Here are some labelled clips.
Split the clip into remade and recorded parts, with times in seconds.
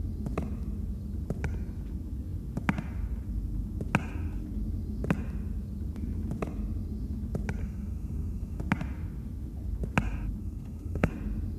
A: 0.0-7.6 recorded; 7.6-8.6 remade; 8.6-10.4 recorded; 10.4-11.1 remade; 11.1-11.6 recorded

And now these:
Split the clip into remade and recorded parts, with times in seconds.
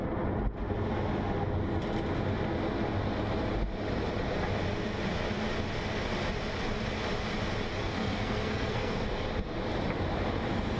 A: 0.0-7.8 recorded; 7.8-9.0 remade; 9.0-10.8 recorded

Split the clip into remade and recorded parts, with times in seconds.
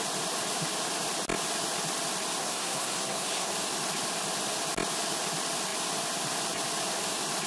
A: 0.0-2.4 recorded; 2.4-3.5 remade; 3.5-7.5 recorded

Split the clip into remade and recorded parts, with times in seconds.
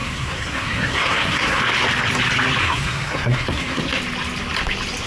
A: 0.0-1.6 remade; 1.6-2.6 recorded; 2.6-3.8 remade; 3.8-5.1 recorded